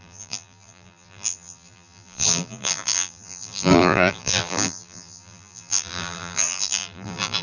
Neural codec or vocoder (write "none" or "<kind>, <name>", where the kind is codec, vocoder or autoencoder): vocoder, BigVGAN v2